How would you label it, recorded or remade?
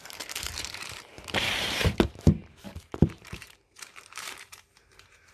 remade